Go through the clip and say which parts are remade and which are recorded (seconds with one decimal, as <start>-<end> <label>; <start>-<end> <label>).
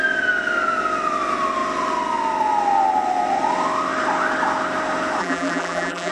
0.0-5.2 recorded; 5.2-6.1 remade